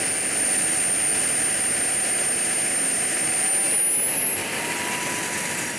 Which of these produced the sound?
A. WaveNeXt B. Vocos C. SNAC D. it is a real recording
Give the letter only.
D